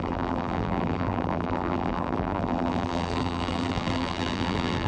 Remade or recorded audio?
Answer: remade